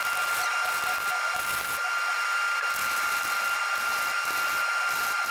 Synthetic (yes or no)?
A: no